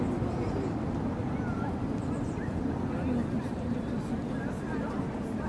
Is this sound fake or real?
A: real